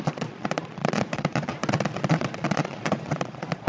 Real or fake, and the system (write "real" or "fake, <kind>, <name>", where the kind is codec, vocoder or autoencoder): fake, vocoder, Vocos